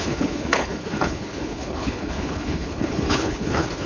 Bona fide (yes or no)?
no